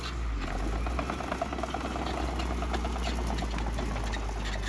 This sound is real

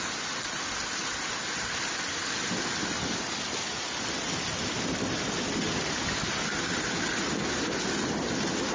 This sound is real